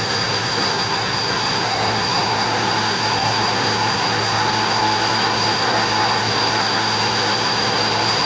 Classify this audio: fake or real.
fake